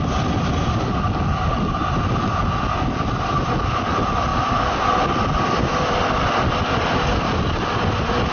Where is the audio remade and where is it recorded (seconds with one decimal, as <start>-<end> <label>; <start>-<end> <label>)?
0.0-8.3 recorded